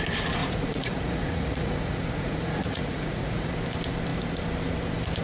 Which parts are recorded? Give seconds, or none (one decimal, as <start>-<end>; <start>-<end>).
0.0-0.4; 3.5-5.2